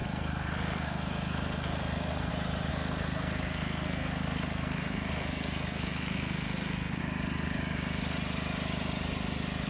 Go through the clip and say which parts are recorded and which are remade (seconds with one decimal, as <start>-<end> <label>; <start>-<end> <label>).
0.0-2.3 remade; 2.3-2.7 recorded; 2.7-7.0 remade; 7.0-9.7 recorded